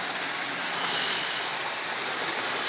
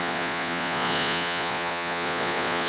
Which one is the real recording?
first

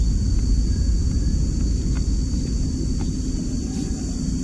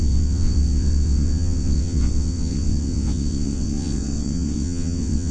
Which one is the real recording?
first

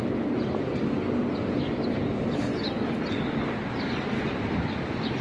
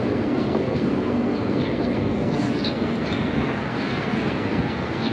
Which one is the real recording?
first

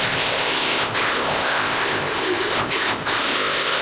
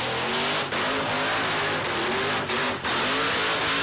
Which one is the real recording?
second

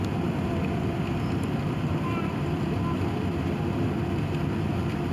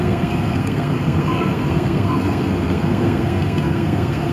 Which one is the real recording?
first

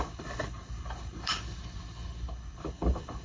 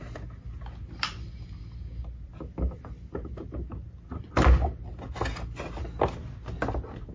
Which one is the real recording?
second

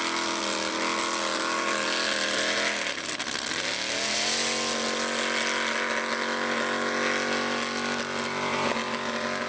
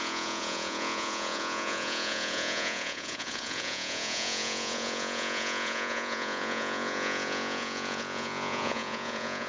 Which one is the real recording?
first